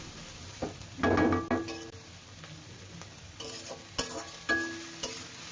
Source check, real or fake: real